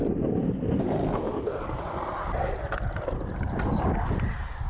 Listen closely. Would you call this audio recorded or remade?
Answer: remade